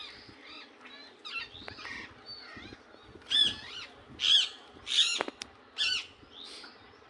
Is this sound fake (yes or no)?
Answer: no